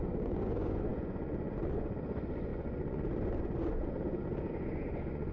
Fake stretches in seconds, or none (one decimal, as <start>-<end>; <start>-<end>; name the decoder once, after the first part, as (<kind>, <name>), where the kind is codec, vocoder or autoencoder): 0.0-5.3 (vocoder, Vocos)